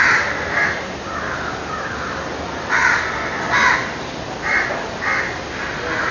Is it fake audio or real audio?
real